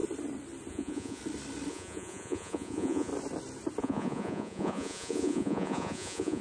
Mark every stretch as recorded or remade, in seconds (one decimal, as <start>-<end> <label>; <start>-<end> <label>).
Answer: 0.0-0.7 recorded; 0.7-1.2 remade; 1.2-1.7 recorded; 1.7-3.1 remade; 3.1-3.8 recorded; 3.8-6.4 remade